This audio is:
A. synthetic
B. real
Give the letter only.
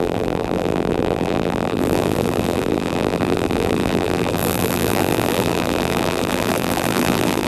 A